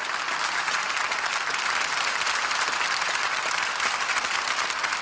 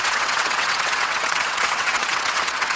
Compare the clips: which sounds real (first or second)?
first